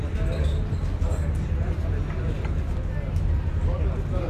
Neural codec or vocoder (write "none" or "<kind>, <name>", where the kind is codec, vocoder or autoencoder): none